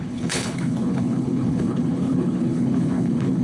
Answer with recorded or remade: remade